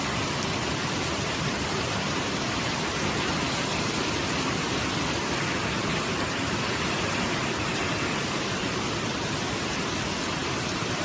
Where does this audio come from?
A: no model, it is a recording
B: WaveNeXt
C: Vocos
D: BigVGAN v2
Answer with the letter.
D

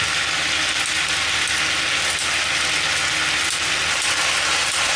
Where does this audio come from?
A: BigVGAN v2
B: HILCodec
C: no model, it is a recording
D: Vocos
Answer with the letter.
C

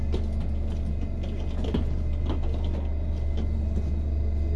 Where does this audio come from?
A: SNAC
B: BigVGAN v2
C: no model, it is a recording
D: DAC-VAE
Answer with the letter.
C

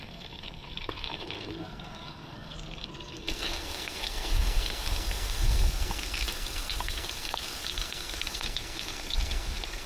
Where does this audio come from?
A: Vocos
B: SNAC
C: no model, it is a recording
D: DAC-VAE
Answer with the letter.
B